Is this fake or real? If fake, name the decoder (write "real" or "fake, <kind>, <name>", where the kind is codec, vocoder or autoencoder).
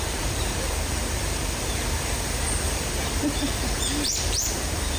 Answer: fake, vocoder, BigVGAN v2